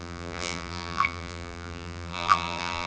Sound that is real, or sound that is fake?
fake